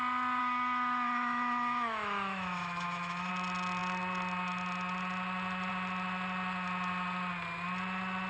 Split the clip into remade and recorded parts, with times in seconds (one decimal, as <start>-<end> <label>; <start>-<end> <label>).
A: 0.0-0.4 recorded; 0.4-3.3 remade; 3.3-8.3 recorded